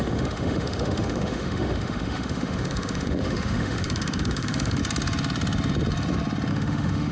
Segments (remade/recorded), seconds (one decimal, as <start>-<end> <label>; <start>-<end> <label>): 0.0-4.8 remade; 4.8-6.5 recorded; 6.5-7.1 remade